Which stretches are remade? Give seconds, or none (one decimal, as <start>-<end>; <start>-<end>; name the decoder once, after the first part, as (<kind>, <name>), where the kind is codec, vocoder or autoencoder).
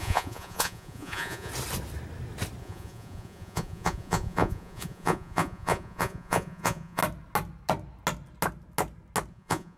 0.0-1.5 (vocoder, Vocos); 2.6-7.0; 9.3-9.8